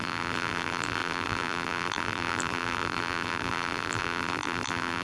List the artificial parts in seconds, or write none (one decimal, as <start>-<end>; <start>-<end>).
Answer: 0.0-5.0